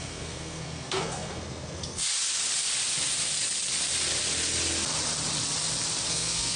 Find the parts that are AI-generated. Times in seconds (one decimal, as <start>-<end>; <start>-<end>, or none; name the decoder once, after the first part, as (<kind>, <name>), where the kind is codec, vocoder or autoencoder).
0.0-2.1 (codec, SNAC); 6.1-6.6